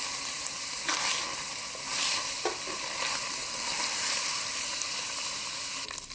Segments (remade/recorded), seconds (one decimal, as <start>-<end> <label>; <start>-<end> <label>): 0.0-3.4 recorded; 3.4-4.6 remade; 4.6-6.1 recorded